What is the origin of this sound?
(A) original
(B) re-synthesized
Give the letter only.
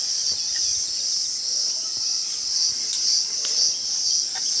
A